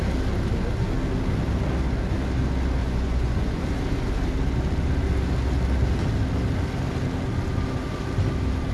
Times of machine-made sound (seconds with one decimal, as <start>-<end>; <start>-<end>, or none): 2.8-3.6